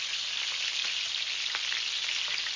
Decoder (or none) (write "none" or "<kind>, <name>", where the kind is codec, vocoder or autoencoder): none